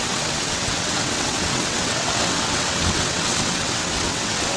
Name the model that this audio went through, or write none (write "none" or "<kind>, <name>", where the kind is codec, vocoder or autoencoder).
vocoder, WaveNeXt